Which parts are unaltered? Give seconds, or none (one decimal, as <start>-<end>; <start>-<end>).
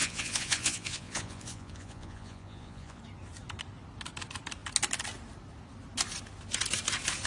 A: 3.0-7.3